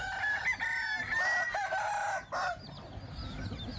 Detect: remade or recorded recorded